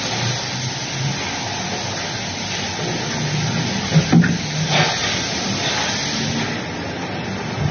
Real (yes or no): yes